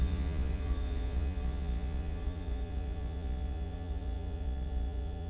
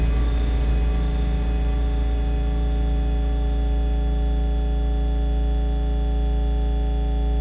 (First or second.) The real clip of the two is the second